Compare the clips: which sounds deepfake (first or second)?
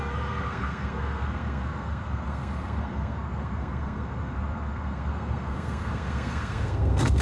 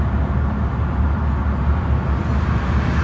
first